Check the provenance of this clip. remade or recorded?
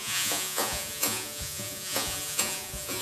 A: remade